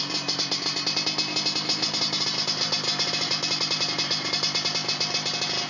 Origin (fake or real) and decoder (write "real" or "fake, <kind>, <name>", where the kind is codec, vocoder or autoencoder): real